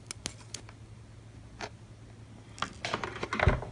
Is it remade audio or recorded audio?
recorded